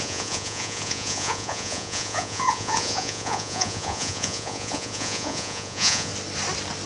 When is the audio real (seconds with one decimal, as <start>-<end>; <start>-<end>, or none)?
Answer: 6.1-6.9